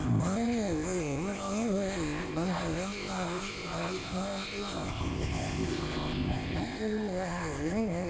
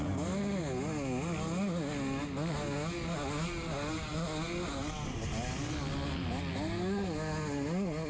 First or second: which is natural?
second